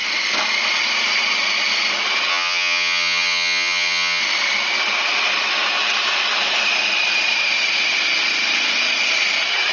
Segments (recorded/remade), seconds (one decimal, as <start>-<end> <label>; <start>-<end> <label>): 0.0-2.3 recorded; 2.3-4.2 remade; 4.2-9.7 recorded